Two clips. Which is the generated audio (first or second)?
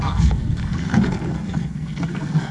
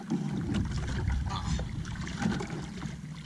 first